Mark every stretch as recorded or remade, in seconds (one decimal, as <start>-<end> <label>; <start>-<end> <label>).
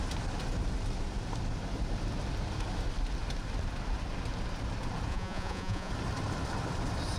0.0-5.1 recorded; 5.1-5.9 remade; 5.9-7.2 recorded